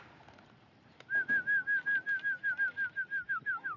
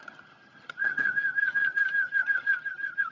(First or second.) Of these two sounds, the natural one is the first